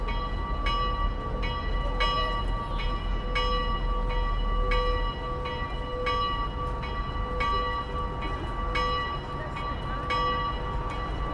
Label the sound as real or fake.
real